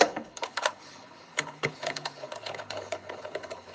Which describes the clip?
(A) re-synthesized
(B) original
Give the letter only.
A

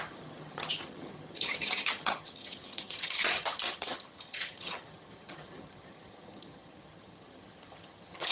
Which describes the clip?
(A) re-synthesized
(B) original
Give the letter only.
A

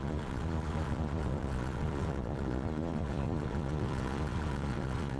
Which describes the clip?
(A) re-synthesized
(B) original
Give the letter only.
A